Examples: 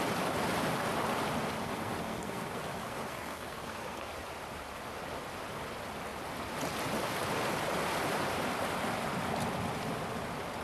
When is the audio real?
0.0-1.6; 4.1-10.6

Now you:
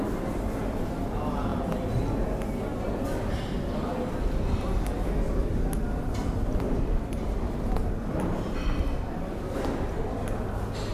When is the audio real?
0.0-10.9